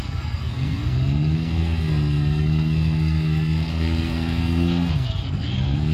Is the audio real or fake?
fake